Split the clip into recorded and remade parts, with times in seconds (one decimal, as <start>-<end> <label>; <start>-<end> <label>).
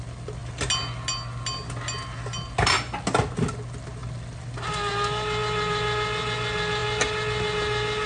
0.0-8.1 recorded